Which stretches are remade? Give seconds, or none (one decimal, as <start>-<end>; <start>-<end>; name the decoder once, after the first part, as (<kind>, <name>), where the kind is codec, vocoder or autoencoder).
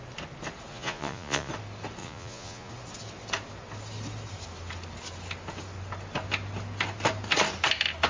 0.7-1.5 (vocoder, Vocos); 2.0-2.7